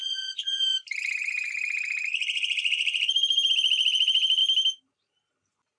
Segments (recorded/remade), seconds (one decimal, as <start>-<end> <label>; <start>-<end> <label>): 0.0-3.5 remade; 3.5-4.4 recorded; 4.4-5.1 remade; 5.1-5.8 recorded